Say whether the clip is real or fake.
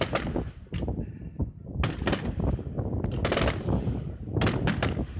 real